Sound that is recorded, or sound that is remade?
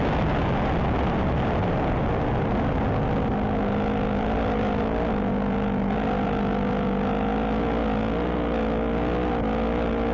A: recorded